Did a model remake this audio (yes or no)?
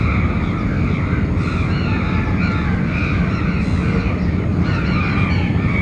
no